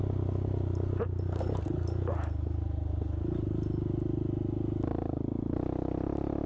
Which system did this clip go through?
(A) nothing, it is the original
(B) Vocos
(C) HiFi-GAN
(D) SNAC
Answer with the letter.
A